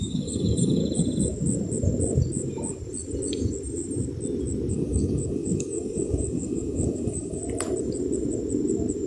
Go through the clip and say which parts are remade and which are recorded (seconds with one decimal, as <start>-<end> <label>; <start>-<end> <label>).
0.0-0.8 remade; 0.8-4.7 recorded; 4.7-7.4 remade; 7.4-9.1 recorded